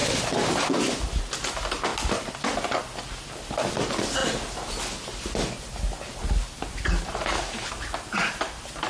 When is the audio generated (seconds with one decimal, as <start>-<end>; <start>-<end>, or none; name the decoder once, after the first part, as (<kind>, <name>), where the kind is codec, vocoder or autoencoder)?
0.0-0.7 (vocoder, BigVGAN v2)